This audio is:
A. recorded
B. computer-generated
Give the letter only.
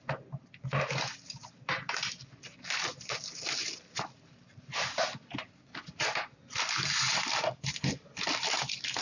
A